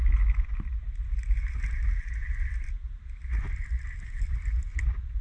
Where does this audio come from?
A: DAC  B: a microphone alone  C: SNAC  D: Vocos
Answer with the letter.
B